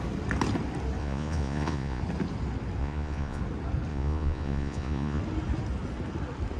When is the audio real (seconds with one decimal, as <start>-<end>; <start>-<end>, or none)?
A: 0.0-1.0; 2.0-2.8; 3.4-3.9; 5.2-6.6